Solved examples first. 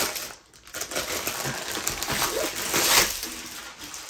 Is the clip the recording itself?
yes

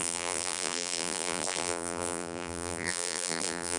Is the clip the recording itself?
no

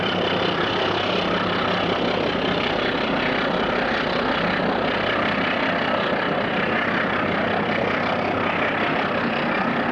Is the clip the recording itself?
no